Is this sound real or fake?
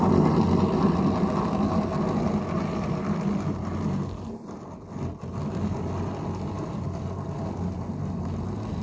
real